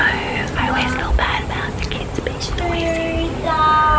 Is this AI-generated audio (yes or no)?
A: no